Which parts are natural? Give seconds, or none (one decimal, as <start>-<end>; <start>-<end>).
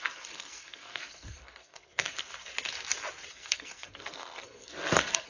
2.3-3.3